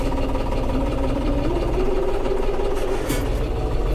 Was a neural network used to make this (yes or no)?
no